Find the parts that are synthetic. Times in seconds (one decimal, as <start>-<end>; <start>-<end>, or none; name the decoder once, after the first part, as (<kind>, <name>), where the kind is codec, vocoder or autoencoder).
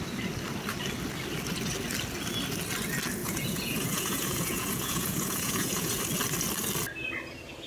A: 3.2-6.0 (vocoder, Vocos)